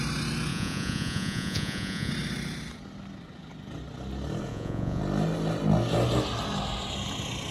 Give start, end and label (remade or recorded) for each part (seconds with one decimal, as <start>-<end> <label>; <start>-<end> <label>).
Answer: 0.0-0.5 recorded; 0.5-2.1 remade; 2.1-4.5 recorded; 4.5-5.0 remade; 5.0-7.5 recorded